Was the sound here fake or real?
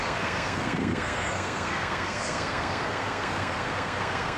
fake